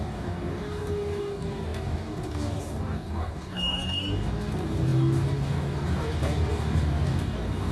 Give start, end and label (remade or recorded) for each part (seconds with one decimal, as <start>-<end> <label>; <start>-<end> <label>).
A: 0.0-7.7 remade